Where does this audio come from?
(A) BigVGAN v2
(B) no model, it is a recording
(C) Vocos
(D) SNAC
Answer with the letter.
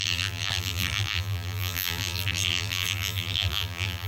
A